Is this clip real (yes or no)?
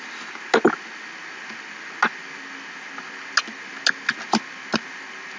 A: yes